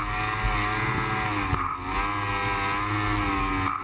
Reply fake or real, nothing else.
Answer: real